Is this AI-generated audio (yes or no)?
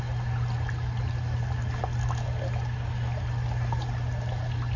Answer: no